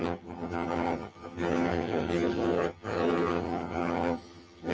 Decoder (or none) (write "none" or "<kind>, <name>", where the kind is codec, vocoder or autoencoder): vocoder, HiFi-GAN